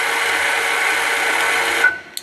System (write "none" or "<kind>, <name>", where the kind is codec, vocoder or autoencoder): none